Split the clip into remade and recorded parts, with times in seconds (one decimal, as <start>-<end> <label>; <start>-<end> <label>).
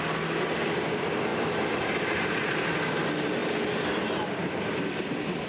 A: 0.0-5.5 recorded